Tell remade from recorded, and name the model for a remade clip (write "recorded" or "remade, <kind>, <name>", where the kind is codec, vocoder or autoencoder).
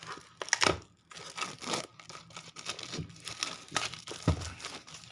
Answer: recorded